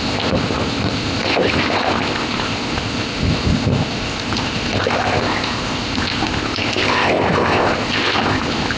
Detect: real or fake fake